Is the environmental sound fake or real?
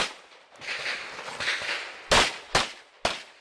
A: real